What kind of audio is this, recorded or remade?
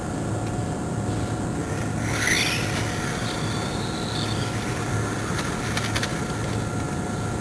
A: recorded